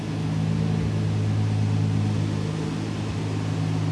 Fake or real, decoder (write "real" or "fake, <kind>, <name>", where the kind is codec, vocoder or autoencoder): real